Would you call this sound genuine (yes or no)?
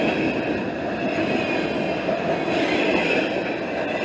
yes